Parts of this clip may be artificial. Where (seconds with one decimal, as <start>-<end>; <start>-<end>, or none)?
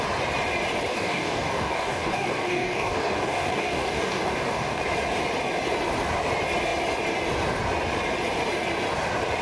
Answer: 0.9-4.8